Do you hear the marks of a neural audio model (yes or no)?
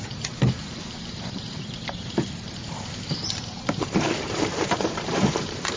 yes